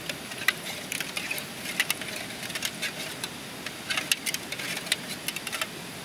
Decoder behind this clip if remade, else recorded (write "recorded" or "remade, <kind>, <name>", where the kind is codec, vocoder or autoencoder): recorded